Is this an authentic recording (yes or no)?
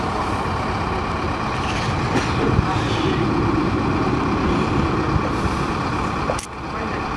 yes